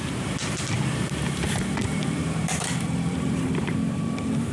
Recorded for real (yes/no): no